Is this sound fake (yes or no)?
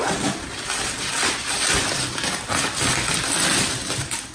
no